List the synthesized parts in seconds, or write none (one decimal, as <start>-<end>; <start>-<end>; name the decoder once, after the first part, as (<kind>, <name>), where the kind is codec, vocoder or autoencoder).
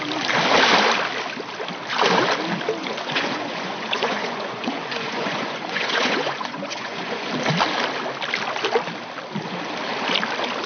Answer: 2.8-7.3 (vocoder, Vocos)